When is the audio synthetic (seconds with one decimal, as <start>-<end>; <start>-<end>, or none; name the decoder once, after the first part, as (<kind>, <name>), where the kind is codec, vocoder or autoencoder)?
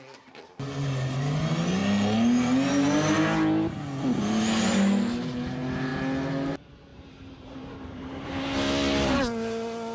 6.9-8.3 (vocoder, BigVGAN v2)